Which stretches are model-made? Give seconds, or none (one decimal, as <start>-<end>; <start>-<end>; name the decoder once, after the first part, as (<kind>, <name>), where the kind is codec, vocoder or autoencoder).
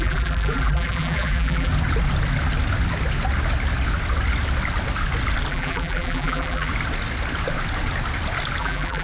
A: 0.0-1.7 (vocoder, BigVGAN v2); 5.5-6.7; 8.6-9.0